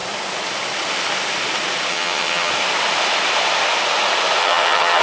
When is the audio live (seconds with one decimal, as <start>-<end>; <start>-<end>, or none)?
0.0-1.9; 2.5-4.4